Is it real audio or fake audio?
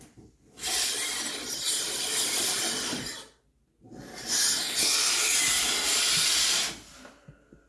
real